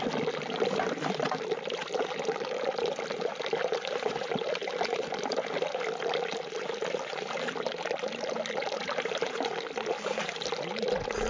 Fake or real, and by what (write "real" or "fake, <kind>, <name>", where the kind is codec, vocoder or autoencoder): real